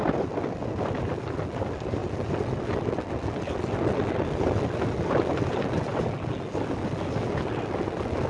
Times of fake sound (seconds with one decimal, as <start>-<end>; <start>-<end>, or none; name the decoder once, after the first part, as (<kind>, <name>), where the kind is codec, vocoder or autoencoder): none